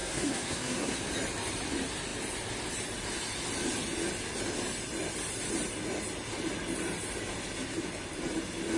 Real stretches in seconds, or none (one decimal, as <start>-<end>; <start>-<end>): 1.0-8.8